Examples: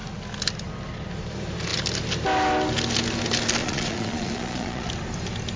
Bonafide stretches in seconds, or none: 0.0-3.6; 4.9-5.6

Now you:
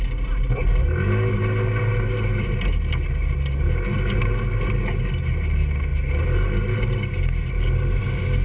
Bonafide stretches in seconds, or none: 0.0-8.4

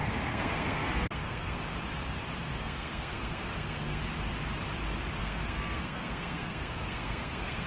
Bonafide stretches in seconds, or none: 1.6-2.4; 4.0-5.2

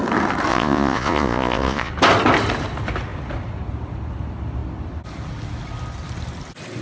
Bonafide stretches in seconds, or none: 0.0-0.5; 1.9-6.8

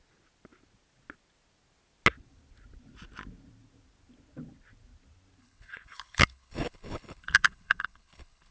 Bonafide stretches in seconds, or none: 0.0-5.4

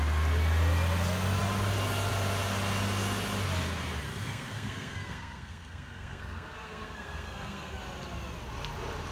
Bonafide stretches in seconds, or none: 0.0-4.1; 7.8-9.1

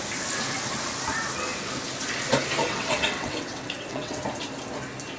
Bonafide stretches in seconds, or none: 0.0-2.6; 4.2-5.2

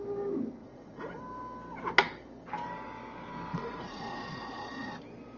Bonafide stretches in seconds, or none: 0.0-0.6; 1.2-3.5; 4.9-5.4